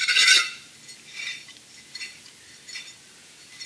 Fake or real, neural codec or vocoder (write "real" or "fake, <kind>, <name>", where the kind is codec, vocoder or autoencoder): real